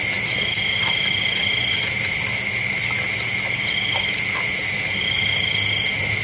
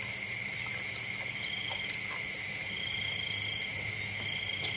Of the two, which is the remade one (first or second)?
second